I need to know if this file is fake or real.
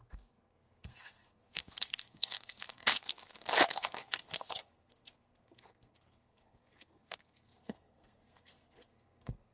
fake